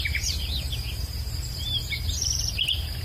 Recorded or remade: remade